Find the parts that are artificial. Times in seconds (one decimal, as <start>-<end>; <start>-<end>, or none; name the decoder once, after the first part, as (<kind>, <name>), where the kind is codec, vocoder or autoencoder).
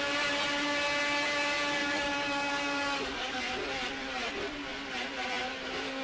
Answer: 1.8-3.4 (codec, DAC)